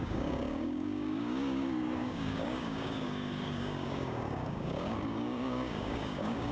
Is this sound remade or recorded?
remade